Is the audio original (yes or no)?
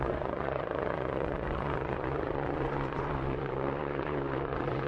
no